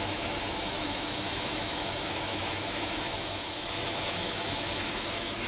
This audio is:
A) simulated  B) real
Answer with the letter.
A